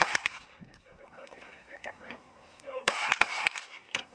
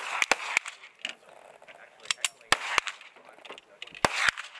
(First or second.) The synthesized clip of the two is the first